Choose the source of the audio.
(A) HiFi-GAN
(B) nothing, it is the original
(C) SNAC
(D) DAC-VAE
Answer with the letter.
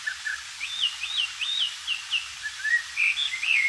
B